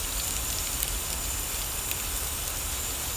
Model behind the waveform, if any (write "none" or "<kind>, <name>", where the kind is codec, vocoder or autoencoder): none